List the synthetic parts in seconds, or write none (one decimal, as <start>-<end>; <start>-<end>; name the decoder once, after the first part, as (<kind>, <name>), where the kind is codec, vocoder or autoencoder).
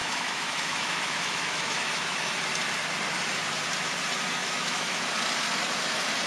0.0-2.4 (autoencoder, DAC-VAE); 4.4-5.0